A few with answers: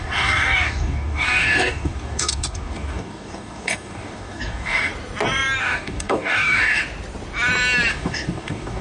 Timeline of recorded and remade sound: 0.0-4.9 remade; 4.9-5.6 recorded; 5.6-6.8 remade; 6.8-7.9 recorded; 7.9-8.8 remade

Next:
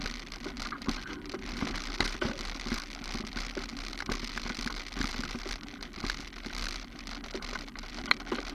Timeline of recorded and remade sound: 0.0-8.5 recorded

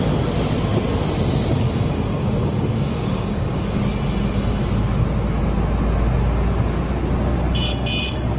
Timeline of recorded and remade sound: 0.0-1.5 recorded; 1.5-3.8 remade; 3.8-8.4 recorded

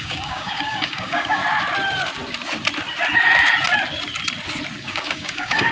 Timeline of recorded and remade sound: 0.0-1.4 remade; 1.4-4.8 recorded; 4.8-5.7 remade

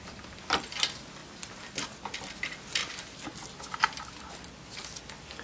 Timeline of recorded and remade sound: 0.0-5.4 recorded